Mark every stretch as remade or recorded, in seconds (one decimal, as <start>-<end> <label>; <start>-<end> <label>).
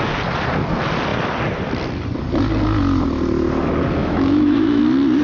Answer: 0.0-4.0 recorded; 4.0-4.8 remade; 4.8-5.2 recorded